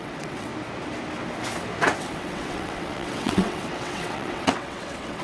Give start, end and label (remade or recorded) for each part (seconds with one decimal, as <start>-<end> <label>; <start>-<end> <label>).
0.0-0.5 remade; 0.5-2.0 recorded; 2.0-5.2 remade